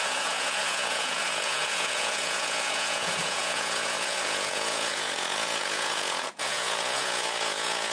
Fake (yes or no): yes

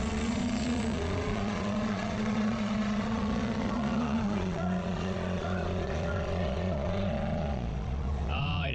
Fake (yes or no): yes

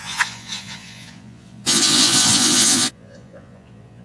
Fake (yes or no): yes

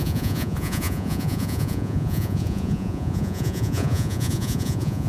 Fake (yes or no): yes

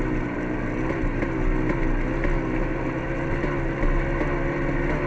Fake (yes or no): no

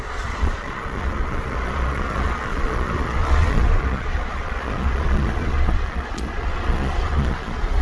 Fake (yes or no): yes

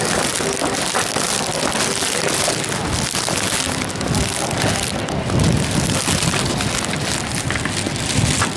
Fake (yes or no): no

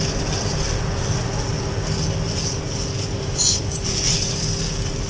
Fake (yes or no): no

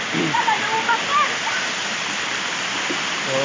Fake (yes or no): no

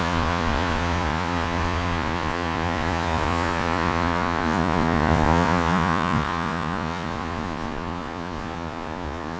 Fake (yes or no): yes